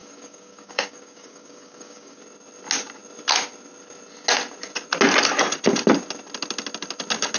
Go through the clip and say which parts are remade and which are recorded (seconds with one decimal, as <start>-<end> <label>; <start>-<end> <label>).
0.0-2.2 remade; 2.2-7.4 recorded